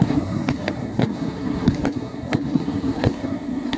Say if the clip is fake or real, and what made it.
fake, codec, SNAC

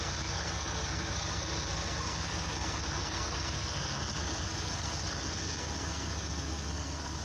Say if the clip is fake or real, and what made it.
fake, codec, SNAC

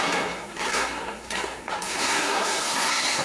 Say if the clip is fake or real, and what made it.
fake, codec, SNAC